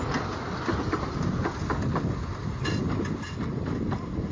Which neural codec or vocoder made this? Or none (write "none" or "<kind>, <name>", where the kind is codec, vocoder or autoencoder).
none